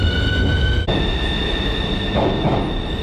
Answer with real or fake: real